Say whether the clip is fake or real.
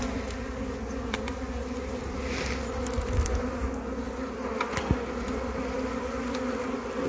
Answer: real